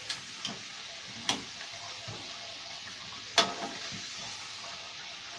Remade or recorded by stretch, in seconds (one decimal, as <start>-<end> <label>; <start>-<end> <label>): 0.0-2.5 recorded; 2.5-3.0 remade; 3.0-5.4 recorded